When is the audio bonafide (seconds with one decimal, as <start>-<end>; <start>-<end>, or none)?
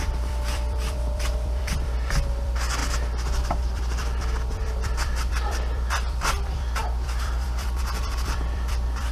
2.8-3.4